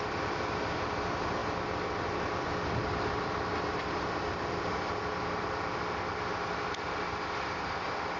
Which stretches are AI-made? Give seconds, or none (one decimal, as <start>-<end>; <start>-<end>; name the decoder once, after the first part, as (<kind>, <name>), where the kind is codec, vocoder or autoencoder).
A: none